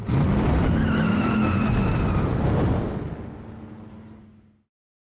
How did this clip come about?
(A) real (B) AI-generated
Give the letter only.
A